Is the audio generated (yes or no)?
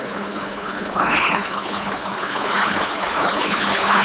yes